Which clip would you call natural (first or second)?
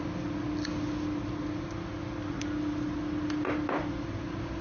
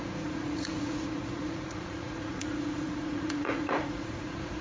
first